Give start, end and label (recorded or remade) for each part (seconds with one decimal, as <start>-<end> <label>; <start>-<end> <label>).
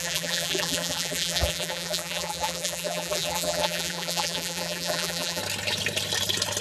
0.0-5.4 remade; 5.4-6.6 recorded